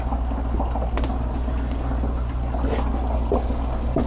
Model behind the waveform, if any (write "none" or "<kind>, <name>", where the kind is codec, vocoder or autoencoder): none